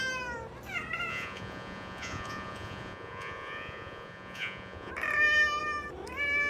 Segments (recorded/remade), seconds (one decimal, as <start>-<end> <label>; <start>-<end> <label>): 0.0-1.1 recorded; 1.1-4.9 remade; 4.9-6.5 recorded